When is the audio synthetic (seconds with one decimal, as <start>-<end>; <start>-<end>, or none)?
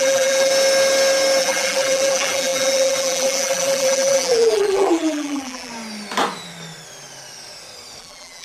0.0-0.5; 1.4-5.7; 8.0-8.4